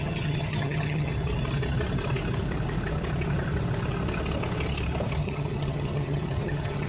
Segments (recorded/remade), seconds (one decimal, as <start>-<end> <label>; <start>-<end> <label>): 0.0-1.1 remade; 1.1-5.2 recorded; 5.2-6.9 remade